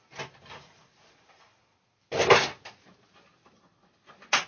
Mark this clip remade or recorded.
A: recorded